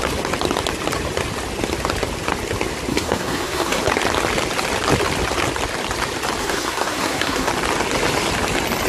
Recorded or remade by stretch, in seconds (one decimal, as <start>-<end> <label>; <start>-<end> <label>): 0.0-2.9 recorded; 2.9-3.8 remade; 3.8-6.4 recorded; 6.4-7.5 remade; 7.5-8.9 recorded